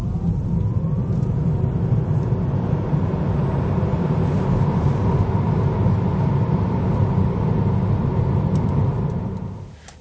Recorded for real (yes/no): yes